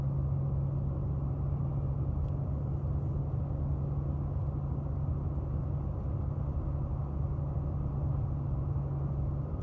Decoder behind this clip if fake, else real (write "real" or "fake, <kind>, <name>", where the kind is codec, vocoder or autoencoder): real